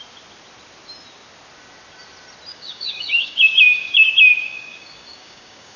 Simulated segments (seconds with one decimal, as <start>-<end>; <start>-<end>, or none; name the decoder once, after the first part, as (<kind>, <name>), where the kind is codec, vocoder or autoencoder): 2.5-5.8 (codec, DAC)